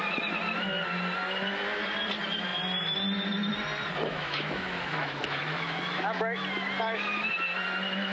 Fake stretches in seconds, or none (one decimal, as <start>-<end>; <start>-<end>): 4.1-6.2